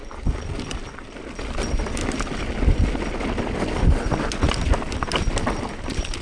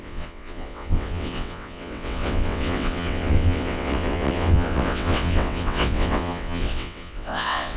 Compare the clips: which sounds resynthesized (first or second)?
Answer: second